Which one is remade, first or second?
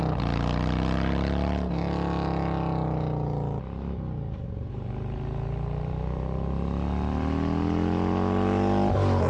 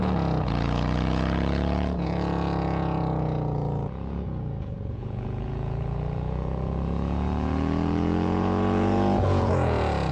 second